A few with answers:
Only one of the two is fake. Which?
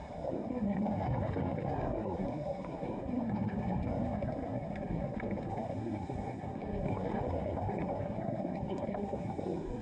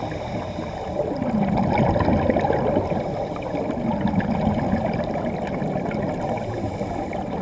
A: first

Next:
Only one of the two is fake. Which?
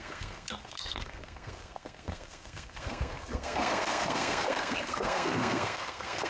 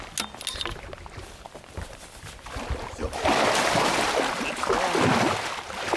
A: first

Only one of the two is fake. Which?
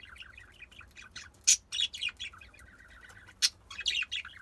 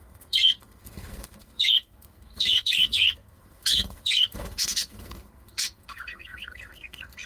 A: second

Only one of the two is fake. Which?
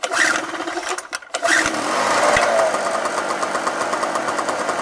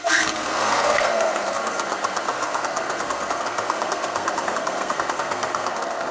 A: second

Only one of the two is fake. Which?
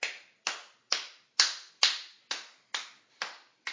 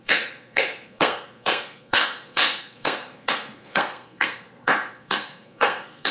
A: second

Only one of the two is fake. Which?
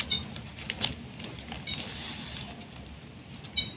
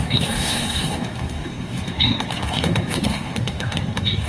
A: second